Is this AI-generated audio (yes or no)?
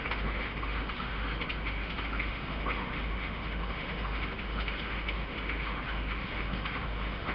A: yes